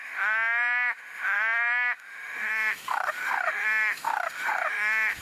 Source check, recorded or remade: remade